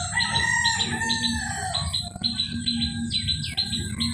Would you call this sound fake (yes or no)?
no